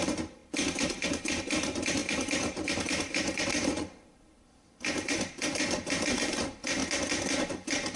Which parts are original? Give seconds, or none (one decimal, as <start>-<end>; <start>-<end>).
6.8-7.4